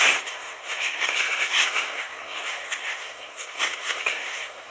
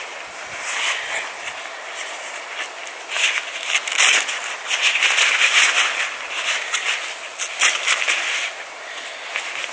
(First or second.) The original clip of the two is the second